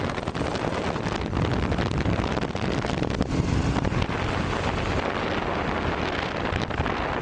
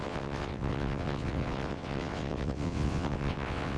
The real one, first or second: first